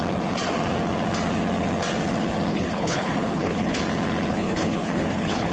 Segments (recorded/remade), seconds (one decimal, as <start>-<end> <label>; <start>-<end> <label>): 0.0-2.5 recorded; 2.5-3.8 remade; 3.8-4.3 recorded; 4.3-5.5 remade